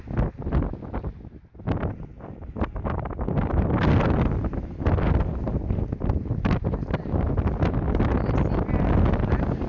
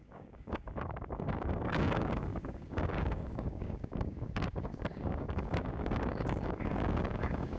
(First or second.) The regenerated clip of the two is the second